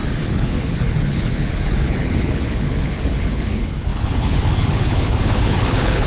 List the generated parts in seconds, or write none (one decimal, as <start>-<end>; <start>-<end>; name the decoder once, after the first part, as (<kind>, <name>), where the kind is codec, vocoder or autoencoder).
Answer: 0.0-6.1 (codec, HILCodec)